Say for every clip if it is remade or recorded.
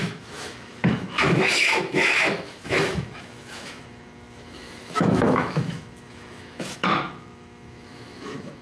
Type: remade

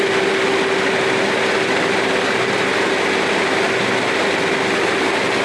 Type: recorded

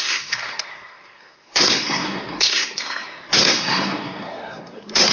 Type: remade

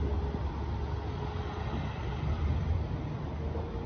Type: recorded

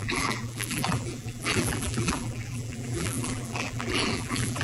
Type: remade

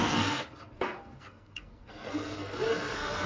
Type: remade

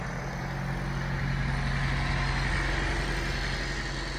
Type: recorded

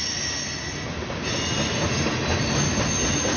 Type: recorded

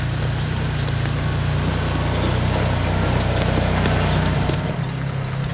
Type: recorded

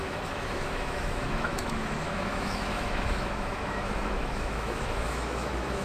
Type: remade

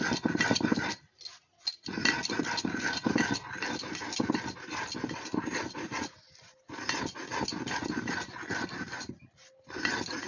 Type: recorded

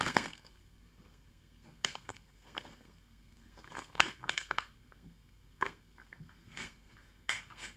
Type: remade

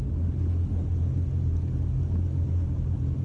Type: recorded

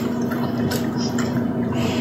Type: recorded